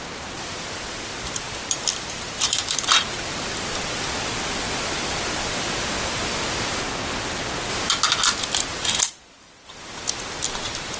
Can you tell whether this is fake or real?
real